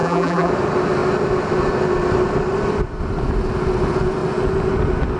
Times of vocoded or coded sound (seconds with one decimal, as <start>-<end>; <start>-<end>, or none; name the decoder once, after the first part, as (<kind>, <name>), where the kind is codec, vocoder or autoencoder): 0.0-0.5 (vocoder, BigVGAN v2)